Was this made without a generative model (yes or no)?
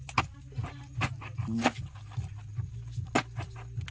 yes